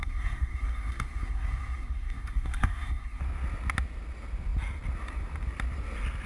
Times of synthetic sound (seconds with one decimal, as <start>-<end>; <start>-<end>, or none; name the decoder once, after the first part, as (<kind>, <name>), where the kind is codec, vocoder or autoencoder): 0.0-3.2 (codec, SNAC)